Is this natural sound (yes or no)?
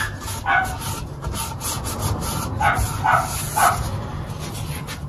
yes